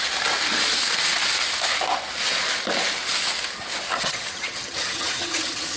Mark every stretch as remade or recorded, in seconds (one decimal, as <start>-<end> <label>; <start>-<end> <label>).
0.0-3.9 recorded; 3.9-5.8 remade